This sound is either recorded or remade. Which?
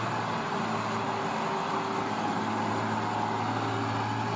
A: recorded